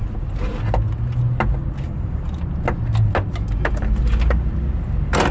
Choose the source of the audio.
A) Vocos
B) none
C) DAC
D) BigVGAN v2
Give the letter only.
B